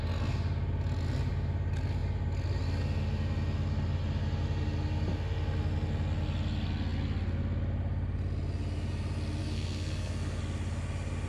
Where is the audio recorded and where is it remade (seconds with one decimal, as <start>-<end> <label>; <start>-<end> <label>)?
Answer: 0.0-9.4 recorded; 9.4-10.4 remade; 10.4-11.3 recorded